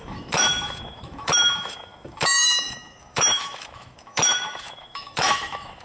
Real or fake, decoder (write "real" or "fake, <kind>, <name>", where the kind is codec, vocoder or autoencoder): fake, autoencoder, DAC-VAE